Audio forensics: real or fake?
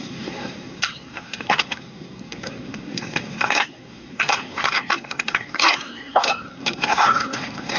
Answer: fake